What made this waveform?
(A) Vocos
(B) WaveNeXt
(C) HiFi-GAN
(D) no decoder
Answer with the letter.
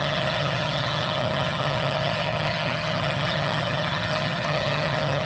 C